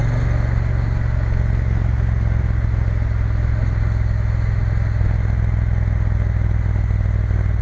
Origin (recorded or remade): recorded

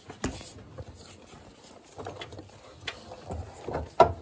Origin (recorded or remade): recorded